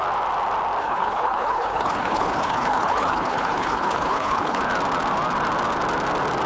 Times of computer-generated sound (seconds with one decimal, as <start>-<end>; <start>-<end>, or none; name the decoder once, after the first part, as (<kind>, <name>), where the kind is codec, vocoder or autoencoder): 0.8-4.6 (codec, HILCodec)